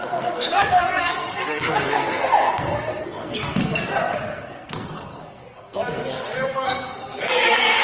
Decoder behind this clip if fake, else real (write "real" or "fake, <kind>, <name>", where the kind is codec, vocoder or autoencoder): fake, codec, SNAC